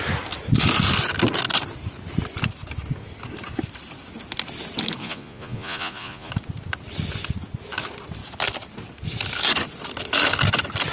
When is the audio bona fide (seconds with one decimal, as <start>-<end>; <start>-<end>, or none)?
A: 0.0-5.0; 6.3-10.9